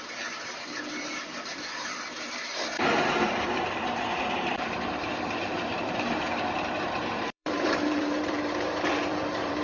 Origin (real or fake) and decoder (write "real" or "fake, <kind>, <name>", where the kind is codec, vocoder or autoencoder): fake, vocoder, BigVGAN v2